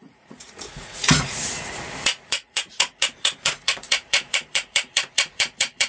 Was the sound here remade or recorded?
remade